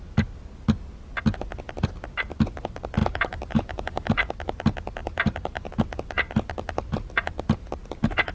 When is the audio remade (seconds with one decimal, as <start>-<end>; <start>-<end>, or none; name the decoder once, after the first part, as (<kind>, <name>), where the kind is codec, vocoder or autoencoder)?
3.0-4.1 (vocoder, BigVGAN v2); 5.0-5.7